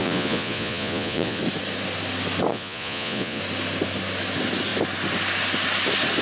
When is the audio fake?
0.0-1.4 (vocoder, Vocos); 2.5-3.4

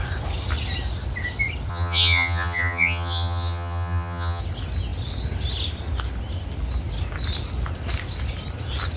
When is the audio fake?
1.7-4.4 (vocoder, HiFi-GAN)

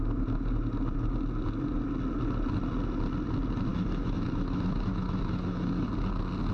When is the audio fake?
3.7-5.9 (autoencoder, DAC-VAE)

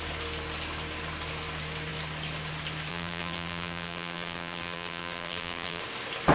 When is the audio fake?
2.9-5.8 (vocoder, BigVGAN v2)

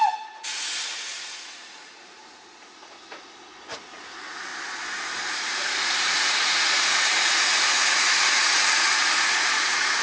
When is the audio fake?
0.0-4.5 (vocoder, Vocos); 5.3-10.0

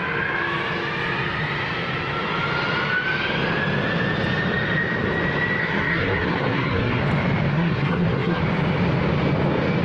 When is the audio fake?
5.6-7.0 (codec, SNAC); 7.5-8.4

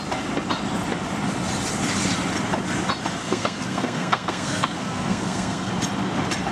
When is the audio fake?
3.2-5.7 (codec, SNAC)

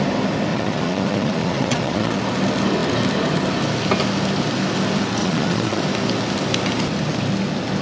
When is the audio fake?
0.5-2.2 (vocoder, Vocos); 5.2-5.8